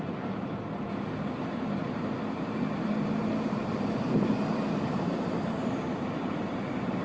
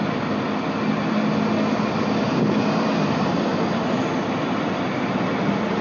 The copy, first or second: first